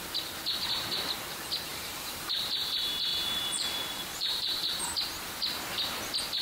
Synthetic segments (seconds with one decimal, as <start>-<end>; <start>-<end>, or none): 1.7-2.3; 3.1-4.8